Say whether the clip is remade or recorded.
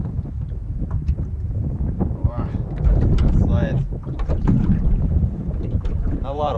remade